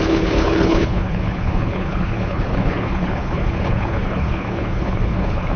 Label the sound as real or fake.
fake